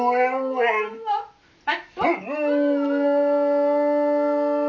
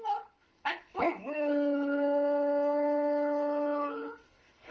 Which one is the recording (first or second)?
first